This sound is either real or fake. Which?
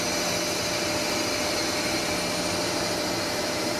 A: real